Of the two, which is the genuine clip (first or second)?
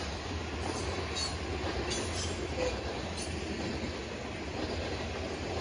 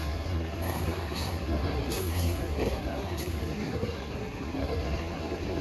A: first